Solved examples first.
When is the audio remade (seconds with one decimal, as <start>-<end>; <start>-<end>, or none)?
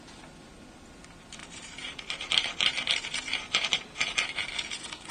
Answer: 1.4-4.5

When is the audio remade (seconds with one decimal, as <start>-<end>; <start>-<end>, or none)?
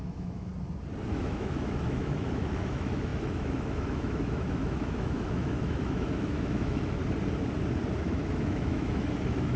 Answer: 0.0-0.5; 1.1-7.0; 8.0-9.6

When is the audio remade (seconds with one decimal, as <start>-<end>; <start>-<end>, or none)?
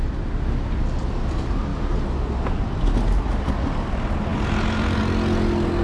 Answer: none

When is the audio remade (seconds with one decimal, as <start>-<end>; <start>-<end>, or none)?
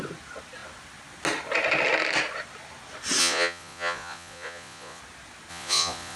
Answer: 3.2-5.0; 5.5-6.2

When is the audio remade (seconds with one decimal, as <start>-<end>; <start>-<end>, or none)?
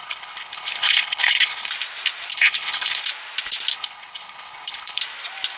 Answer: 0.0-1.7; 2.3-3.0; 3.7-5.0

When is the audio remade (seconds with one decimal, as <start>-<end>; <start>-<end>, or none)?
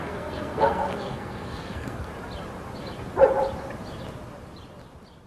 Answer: 0.0-2.1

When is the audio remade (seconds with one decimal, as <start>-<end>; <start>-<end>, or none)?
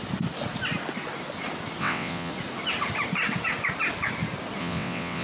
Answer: 1.8-2.3; 4.6-5.2